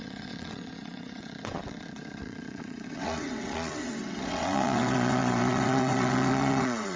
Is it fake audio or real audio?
fake